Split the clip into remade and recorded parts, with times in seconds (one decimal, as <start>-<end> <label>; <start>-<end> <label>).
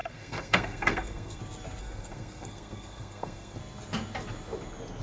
0.0-1.4 remade; 1.4-1.8 recorded; 1.8-3.6 remade; 3.6-5.0 recorded